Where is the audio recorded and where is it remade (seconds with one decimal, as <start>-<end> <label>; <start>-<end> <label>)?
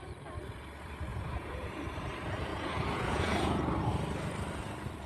0.0-1.1 recorded; 1.1-1.7 remade; 1.7-2.5 recorded; 2.5-3.6 remade; 3.6-5.1 recorded